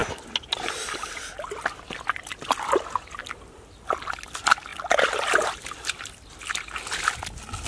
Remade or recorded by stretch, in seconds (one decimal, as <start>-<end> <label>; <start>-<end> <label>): 0.0-7.7 recorded